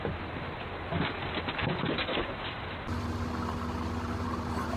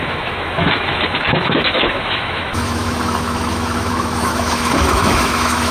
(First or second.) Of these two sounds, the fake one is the second